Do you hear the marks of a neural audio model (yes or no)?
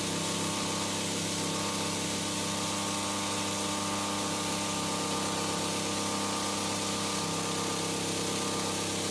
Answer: no